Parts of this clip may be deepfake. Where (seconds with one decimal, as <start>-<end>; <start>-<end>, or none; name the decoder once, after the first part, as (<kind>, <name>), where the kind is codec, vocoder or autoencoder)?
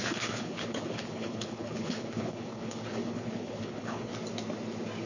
0.0-4.1 (codec, HILCodec)